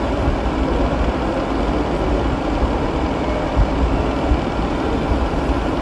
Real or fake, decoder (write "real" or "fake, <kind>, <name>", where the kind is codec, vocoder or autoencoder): real